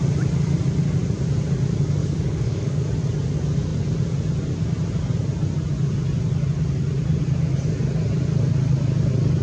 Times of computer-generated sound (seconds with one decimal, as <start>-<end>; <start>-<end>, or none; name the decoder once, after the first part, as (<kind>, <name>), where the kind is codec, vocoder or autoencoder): 2.0-2.9 (codec, DAC)